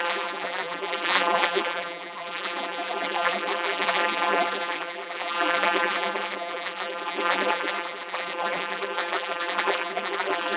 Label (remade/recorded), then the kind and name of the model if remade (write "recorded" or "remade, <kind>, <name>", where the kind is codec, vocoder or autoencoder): remade, vocoder, BigVGAN v2